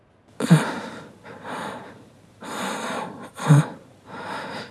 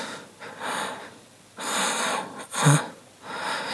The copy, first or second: first